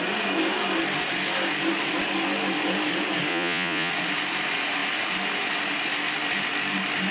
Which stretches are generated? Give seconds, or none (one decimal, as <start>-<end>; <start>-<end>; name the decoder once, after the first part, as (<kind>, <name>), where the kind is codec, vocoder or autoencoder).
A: 3.3-3.9 (vocoder, Vocos)